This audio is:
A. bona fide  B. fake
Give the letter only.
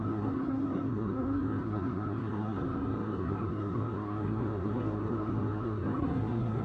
B